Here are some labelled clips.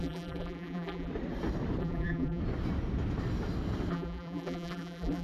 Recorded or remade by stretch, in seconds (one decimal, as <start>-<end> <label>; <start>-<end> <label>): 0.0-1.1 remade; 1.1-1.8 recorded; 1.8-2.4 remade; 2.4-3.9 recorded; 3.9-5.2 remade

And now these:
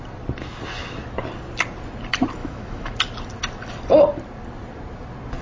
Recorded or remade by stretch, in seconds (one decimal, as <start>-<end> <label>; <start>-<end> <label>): 0.0-2.4 recorded; 2.4-2.9 remade; 2.9-5.4 recorded

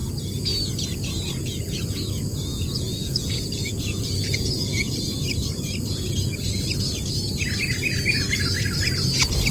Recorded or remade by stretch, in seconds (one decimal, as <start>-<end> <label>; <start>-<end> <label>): 0.0-2.5 recorded; 2.5-5.0 remade; 5.0-9.5 recorded

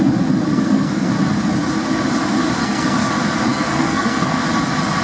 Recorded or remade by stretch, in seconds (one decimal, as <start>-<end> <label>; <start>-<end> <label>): 0.0-0.5 recorded; 0.5-1.1 remade; 1.1-2.6 recorded; 2.6-3.1 remade; 3.1-3.5 recorded; 3.5-4.4 remade; 4.4-5.0 recorded

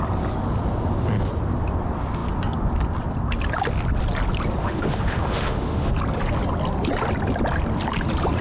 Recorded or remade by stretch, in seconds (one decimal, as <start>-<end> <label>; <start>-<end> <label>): 0.0-4.6 recorded; 4.6-5.9 remade; 5.9-8.4 recorded

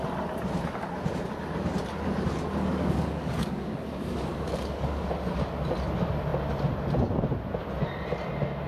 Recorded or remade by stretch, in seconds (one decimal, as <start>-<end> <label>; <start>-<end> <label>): 0.0-2.6 recorded; 2.6-5.1 remade; 5.1-8.7 recorded

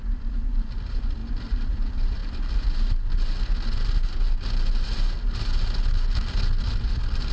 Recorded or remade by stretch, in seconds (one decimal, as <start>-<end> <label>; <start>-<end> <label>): 0.0-1.2 remade; 1.2-1.7 recorded; 1.7-2.2 remade; 2.2-6.6 recorded; 6.6-7.3 remade